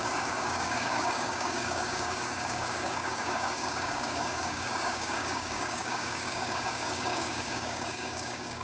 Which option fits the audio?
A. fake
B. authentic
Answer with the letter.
A